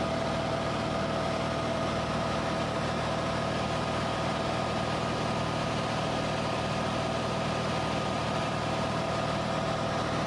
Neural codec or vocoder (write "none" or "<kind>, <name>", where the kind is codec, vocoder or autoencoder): none